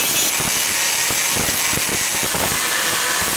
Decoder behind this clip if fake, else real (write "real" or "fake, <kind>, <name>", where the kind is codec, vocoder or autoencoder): real